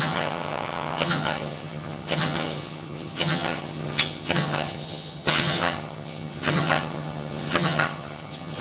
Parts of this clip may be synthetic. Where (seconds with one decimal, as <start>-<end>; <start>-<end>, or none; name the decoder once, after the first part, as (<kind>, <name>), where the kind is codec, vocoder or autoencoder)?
0.0-8.6 (vocoder, HiFi-GAN)